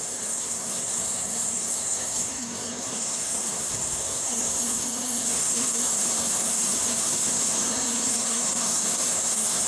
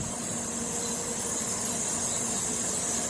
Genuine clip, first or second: second